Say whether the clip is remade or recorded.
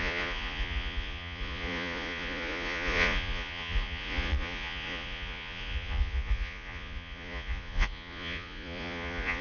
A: remade